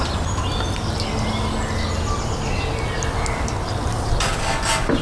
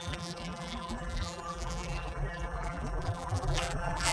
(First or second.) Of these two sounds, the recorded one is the first